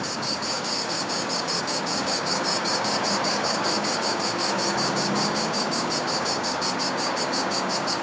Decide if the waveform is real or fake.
fake